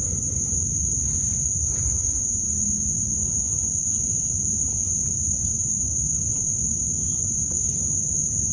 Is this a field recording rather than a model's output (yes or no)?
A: yes